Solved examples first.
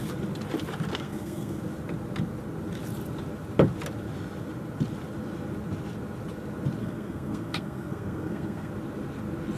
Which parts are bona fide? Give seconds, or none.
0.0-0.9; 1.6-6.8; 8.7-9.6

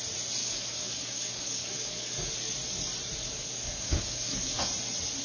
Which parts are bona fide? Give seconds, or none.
0.0-0.4; 2.3-3.2; 4.7-5.2

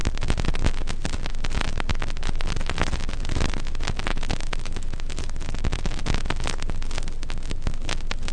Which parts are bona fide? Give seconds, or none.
0.0-4.1; 6.0-8.3

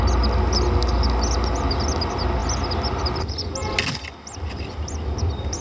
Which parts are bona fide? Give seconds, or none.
0.0-2.4; 3.5-5.6

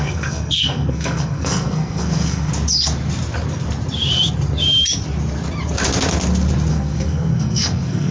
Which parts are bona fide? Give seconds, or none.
2.5-6.7

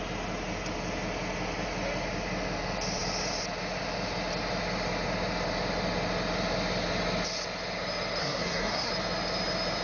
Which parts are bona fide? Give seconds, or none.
0.0-8.2; 8.9-9.8